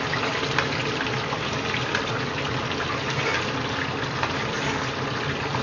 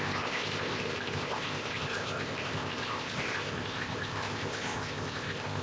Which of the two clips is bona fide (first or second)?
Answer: first